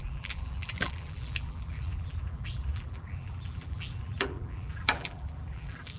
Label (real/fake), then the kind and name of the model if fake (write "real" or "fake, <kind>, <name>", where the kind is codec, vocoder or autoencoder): fake, vocoder, BigVGAN v2